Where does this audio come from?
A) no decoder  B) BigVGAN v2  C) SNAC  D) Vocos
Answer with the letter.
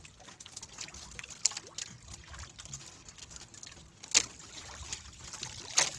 A